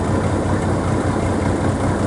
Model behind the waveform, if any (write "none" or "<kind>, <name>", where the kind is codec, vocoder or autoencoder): none